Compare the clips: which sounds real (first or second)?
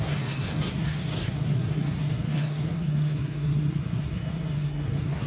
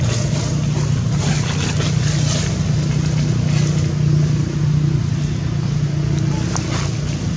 second